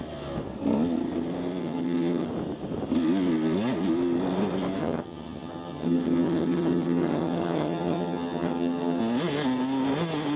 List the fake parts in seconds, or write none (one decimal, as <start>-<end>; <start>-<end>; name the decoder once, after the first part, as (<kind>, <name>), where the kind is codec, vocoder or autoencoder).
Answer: 1.6-2.3 (vocoder, HiFi-GAN); 4.8-9.0